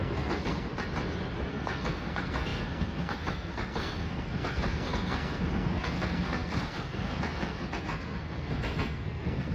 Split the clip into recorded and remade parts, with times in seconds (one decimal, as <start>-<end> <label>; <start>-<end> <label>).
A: 0.0-0.7 remade; 0.7-1.5 recorded; 1.5-9.5 remade

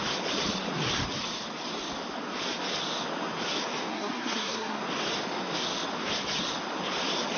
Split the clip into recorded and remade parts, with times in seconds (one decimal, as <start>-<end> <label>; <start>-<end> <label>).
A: 0.0-3.9 recorded; 3.9-4.8 remade; 4.8-7.4 recorded

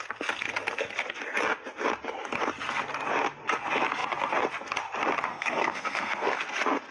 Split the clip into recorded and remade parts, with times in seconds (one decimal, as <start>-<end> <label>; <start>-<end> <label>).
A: 0.0-5.3 recorded; 5.3-6.4 remade; 6.4-6.9 recorded